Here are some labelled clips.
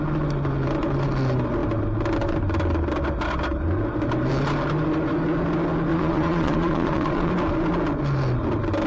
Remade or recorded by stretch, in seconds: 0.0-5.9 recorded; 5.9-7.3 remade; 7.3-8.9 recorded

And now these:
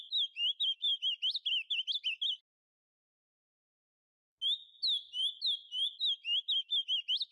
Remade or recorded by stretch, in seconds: 0.0-7.3 recorded

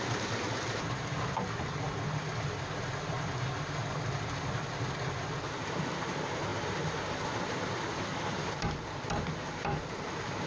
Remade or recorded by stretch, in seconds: 0.0-10.5 recorded

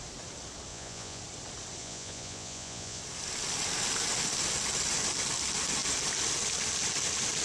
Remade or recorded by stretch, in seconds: 0.0-0.7 recorded; 0.7-1.2 remade; 1.2-1.8 recorded; 1.8-3.0 remade; 3.0-7.4 recorded